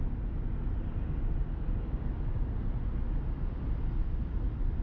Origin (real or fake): real